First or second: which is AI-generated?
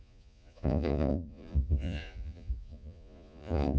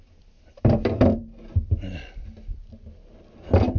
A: first